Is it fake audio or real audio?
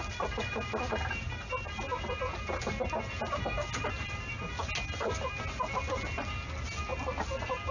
real